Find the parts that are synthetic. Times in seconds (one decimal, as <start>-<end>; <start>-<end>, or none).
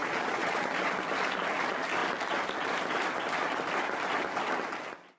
0.0-0.7